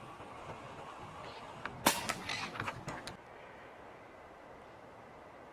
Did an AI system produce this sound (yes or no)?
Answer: no